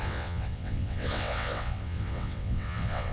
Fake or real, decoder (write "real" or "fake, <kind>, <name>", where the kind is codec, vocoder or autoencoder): fake, vocoder, WaveNeXt